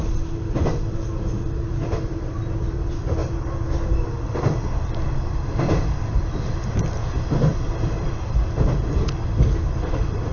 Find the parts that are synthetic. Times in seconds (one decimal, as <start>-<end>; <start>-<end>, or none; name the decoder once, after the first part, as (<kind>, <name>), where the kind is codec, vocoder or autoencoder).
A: 0.0-3.2 (vocoder, BigVGAN v2); 4.4-10.3